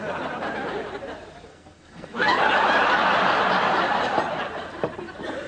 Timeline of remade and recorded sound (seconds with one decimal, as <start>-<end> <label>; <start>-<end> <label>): 0.0-1.5 recorded; 1.5-2.4 remade; 2.4-5.5 recorded